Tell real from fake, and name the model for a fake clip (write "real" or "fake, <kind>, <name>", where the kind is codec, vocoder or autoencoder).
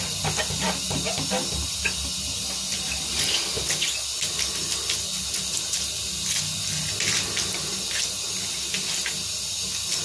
real